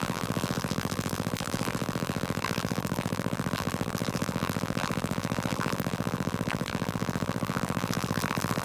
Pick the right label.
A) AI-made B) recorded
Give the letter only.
A